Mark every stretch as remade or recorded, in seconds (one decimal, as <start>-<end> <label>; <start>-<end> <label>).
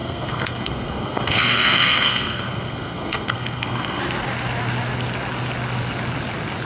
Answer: 0.0-4.0 remade; 4.0-6.7 recorded